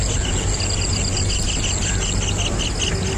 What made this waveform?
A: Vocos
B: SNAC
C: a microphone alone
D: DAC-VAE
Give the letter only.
C